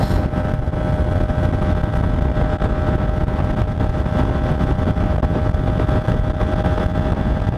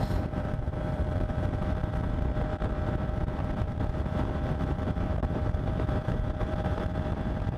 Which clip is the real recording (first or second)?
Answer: first